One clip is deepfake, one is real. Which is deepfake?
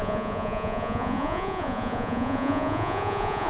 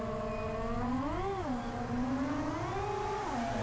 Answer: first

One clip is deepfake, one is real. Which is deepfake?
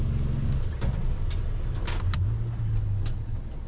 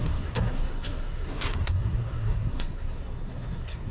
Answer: second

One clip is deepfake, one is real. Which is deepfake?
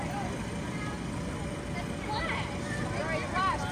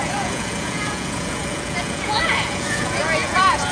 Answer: second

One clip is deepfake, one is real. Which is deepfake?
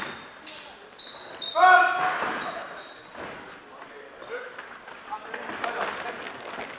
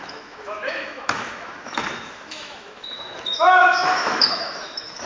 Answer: second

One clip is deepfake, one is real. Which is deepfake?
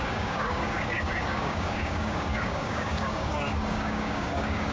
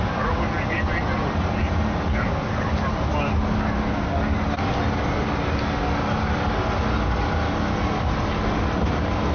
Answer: first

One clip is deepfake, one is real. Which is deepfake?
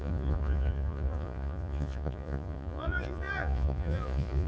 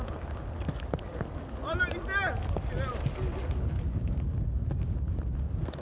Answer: first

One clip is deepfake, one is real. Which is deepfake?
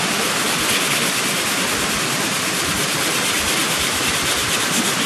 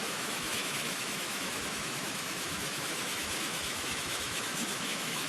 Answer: second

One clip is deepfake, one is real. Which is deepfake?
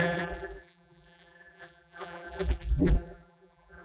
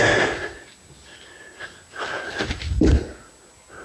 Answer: first